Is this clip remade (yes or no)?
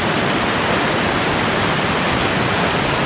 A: no